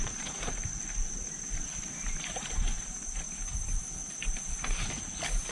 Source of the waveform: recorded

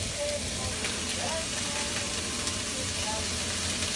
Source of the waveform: recorded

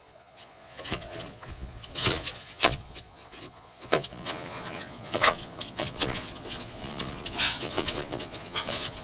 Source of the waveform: remade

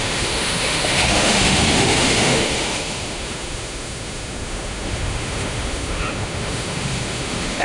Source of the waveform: remade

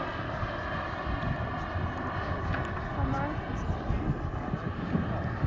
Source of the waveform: recorded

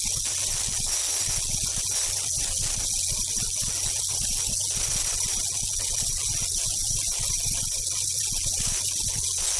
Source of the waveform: recorded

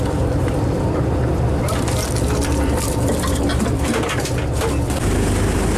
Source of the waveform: remade